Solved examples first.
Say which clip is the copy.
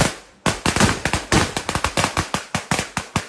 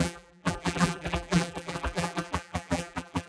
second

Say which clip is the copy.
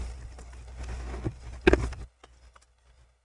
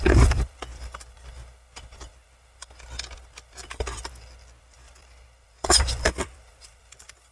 second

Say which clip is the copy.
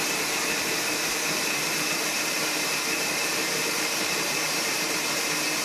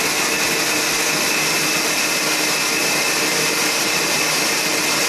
first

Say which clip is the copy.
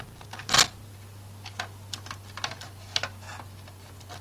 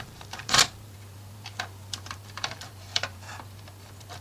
second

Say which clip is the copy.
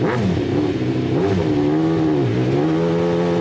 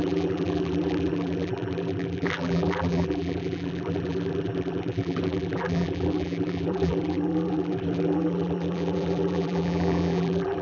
second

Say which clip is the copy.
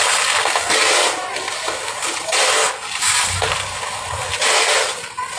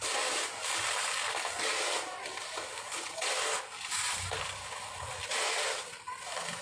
second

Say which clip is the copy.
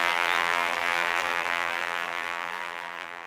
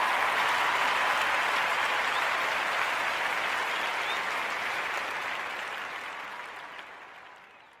first